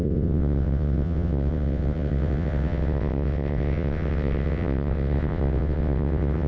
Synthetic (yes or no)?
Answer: yes